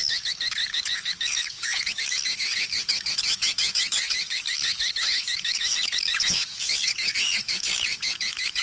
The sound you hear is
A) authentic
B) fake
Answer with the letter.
B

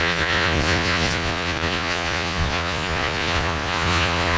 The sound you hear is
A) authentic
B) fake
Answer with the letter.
B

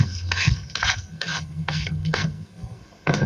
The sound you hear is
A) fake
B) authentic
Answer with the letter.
A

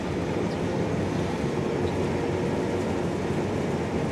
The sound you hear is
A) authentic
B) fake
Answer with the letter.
A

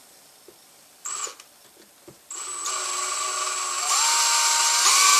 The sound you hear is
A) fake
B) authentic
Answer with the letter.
B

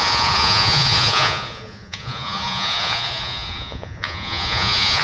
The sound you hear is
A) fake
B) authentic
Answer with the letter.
A